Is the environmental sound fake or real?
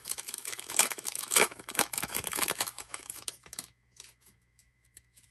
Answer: fake